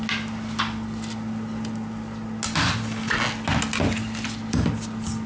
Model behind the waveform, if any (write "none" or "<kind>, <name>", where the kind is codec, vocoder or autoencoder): none